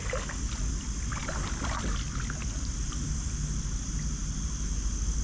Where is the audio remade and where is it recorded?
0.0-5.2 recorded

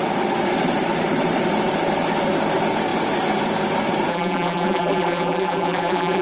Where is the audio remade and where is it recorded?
0.0-4.1 recorded; 4.1-6.2 remade

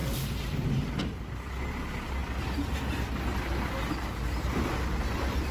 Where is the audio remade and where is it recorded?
0.0-1.2 remade; 1.2-5.5 recorded